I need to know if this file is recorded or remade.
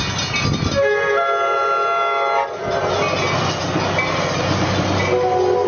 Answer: recorded